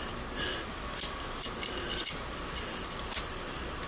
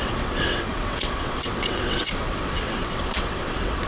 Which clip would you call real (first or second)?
first